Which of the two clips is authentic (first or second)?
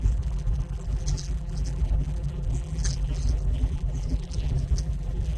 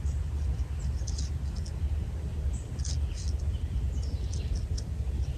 second